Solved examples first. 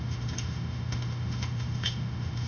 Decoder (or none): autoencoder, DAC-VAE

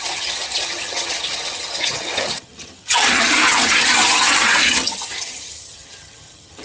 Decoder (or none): vocoder, HiFi-GAN